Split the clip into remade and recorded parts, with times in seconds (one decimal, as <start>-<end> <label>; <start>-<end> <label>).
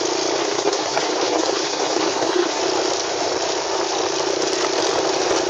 0.0-0.4 recorded; 0.4-2.6 remade; 2.6-5.5 recorded